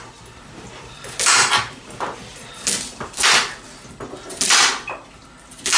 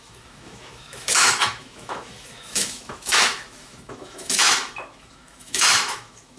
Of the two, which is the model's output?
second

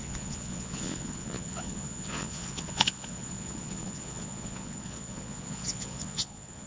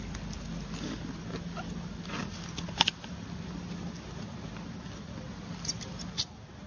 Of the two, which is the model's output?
first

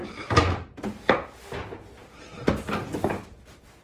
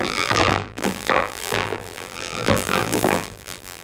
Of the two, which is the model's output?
second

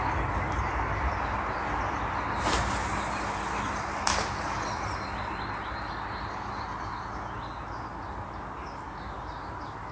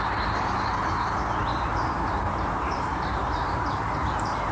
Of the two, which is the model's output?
second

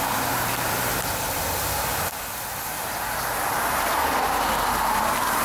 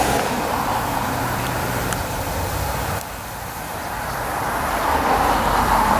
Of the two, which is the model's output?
second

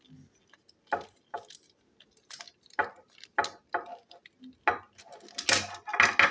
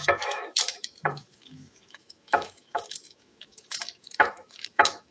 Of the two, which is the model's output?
second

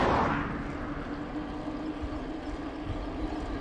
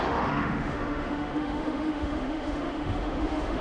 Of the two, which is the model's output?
second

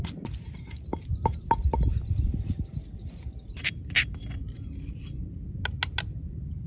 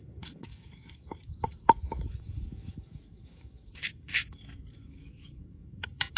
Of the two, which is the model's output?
second